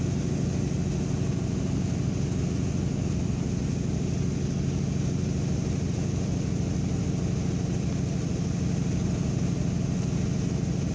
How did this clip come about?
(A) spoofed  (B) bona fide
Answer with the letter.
B